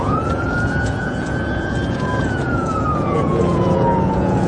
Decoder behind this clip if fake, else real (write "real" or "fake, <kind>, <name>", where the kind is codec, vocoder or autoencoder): fake, vocoder, Vocos